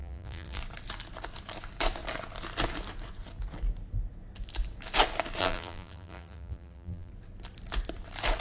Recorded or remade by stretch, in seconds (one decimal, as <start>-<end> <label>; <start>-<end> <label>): 0.0-0.6 remade; 0.6-5.4 recorded; 5.4-7.1 remade; 7.1-8.4 recorded